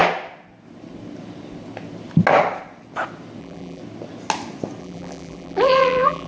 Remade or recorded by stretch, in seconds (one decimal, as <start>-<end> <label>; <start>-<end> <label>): 0.0-3.4 recorded; 3.4-3.8 remade; 3.8-4.8 recorded; 4.8-6.3 remade